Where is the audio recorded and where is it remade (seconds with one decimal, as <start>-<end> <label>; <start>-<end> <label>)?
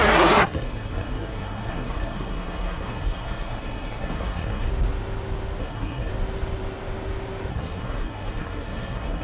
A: 0.0-4.7 remade; 4.7-5.6 recorded; 5.6-6.1 remade; 6.1-7.5 recorded; 7.5-9.2 remade